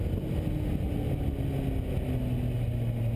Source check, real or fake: real